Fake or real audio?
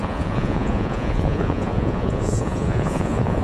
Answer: fake